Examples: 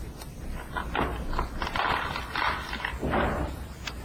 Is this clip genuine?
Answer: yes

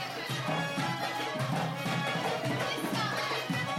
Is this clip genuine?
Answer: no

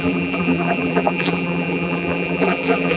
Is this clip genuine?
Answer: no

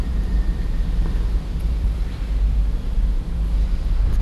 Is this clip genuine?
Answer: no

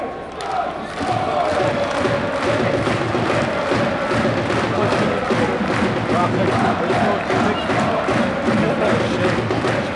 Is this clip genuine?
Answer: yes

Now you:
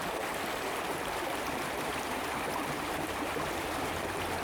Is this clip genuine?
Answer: no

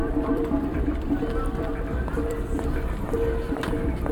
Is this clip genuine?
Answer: no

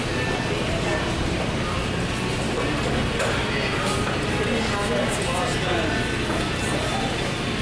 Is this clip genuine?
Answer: yes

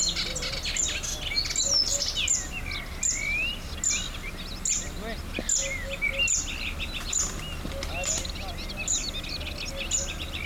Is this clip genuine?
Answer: yes